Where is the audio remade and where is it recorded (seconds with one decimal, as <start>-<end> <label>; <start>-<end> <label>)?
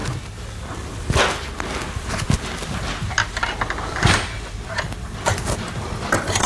0.0-3.9 recorded; 3.9-6.5 remade